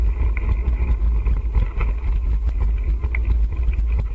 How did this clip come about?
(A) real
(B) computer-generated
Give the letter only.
A